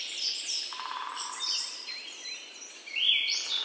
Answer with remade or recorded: remade